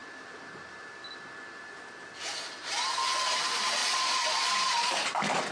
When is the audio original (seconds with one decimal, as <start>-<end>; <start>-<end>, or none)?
0.0-3.8; 4.9-5.5